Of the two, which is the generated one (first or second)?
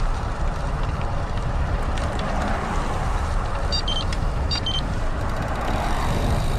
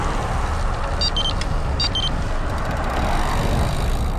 first